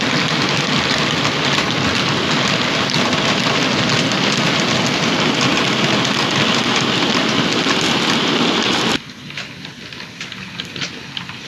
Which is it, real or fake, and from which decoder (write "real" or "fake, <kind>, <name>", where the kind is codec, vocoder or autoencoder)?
real